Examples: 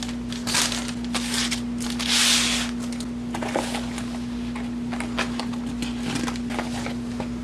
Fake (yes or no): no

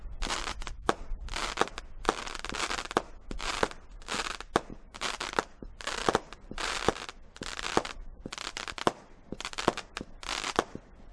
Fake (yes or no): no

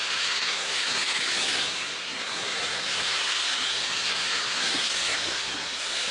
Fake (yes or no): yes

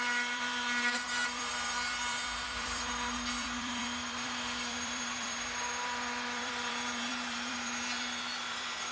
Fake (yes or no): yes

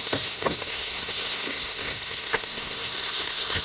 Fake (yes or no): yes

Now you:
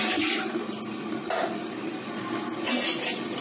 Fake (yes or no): no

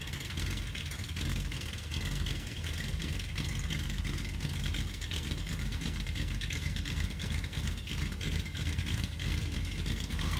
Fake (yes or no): yes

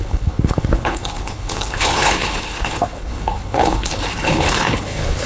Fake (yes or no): yes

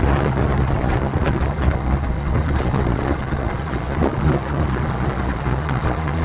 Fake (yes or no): yes